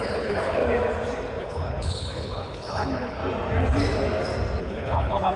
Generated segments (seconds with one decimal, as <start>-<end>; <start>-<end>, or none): 0.0-0.6; 1.4-3.2; 4.6-5.4